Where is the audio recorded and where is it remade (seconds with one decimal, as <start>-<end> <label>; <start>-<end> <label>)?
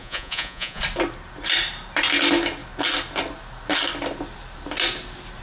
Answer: 0.0-0.8 remade; 0.8-5.4 recorded